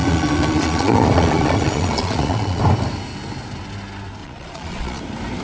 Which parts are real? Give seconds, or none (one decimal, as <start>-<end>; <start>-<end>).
2.6-4.2; 5.0-5.4